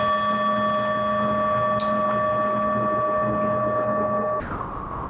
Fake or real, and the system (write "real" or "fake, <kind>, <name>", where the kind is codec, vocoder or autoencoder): real